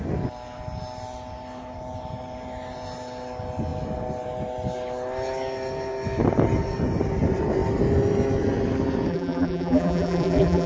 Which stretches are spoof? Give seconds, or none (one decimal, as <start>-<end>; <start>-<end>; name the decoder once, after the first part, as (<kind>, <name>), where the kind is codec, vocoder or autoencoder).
9.1-10.7 (vocoder, BigVGAN v2)